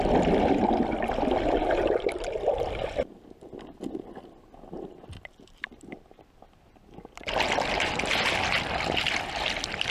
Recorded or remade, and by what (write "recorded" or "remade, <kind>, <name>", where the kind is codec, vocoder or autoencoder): recorded